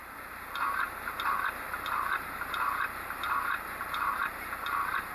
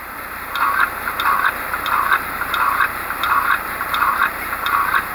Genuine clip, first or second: first